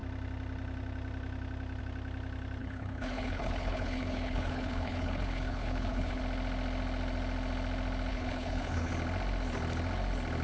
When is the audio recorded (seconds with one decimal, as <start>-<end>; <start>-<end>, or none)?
0.0-2.6; 6.2-8.1; 8.9-10.4